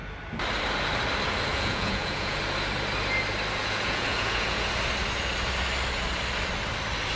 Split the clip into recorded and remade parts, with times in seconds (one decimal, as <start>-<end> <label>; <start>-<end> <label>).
0.0-1.5 recorded; 1.5-2.4 remade; 2.4-3.6 recorded; 3.6-4.7 remade; 4.7-7.1 recorded